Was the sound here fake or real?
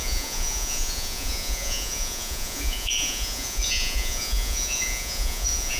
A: fake